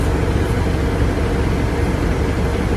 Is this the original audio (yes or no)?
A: yes